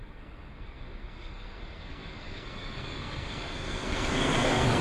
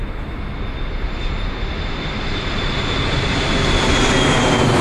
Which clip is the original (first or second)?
second